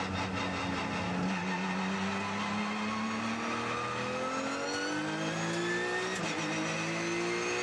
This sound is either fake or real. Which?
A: real